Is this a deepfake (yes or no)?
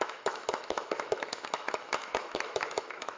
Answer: yes